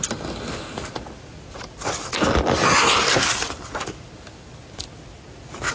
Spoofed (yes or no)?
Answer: no